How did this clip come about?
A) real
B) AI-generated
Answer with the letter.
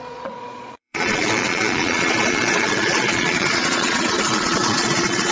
B